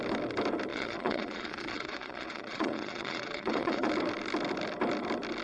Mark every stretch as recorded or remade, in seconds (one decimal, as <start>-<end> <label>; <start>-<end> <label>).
0.0-0.7 recorded; 0.7-3.9 remade; 3.9-5.4 recorded